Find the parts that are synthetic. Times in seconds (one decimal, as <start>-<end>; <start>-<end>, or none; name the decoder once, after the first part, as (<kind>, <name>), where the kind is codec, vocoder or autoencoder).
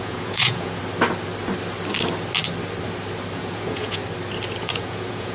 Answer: 0.0-0.8 (vocoder, Vocos); 3.4-4.0; 4.6-5.3